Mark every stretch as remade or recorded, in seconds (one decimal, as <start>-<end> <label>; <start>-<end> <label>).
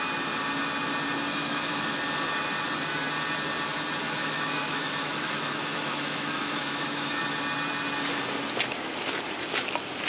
0.0-1.3 recorded; 1.3-2.0 remade; 2.0-4.2 recorded; 4.2-7.2 remade; 7.2-10.1 recorded